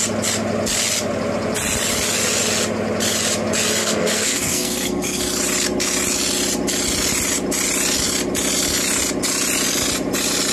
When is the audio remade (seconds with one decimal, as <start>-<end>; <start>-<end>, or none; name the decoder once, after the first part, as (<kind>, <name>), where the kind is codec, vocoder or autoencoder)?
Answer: 3.8-5.2 (codec, SNAC)